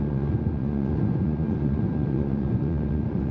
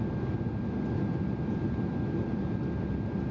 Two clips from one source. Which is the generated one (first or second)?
first